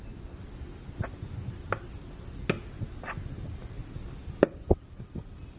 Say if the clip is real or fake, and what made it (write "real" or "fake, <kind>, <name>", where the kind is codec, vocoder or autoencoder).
real